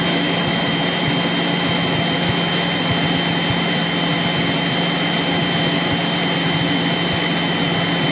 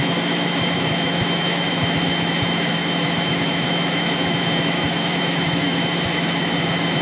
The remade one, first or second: second